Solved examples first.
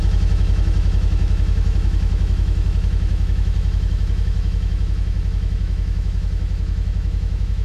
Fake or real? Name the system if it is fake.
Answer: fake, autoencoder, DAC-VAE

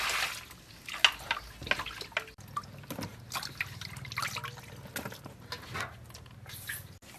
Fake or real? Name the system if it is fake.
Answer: real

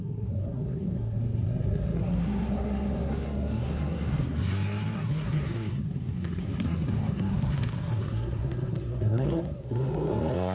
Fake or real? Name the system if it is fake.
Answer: fake, codec, SNAC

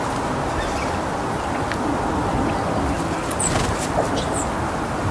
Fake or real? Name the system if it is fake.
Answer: real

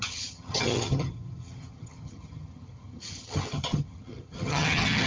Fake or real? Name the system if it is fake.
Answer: fake, vocoder, HiFi-GAN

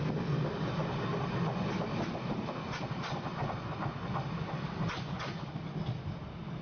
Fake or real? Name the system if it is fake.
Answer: real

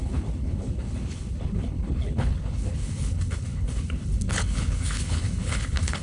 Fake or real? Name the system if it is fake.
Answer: fake, codec, HILCodec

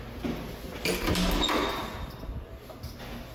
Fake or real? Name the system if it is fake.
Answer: real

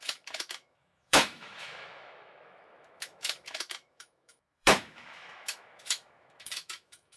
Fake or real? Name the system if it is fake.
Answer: fake, autoencoder, DAC-VAE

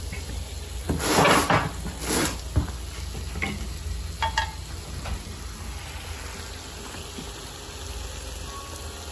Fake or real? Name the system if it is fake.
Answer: real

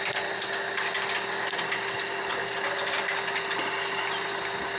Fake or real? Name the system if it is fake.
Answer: real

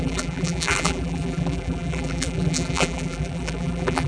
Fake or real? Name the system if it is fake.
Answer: fake, vocoder, BigVGAN v2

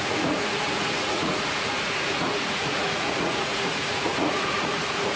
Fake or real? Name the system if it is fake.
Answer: fake, vocoder, Vocos